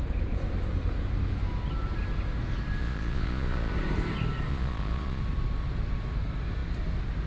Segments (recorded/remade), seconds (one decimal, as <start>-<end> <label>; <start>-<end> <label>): 0.0-2.8 recorded; 2.8-3.7 remade; 3.7-4.5 recorded; 4.5-5.2 remade; 5.2-7.3 recorded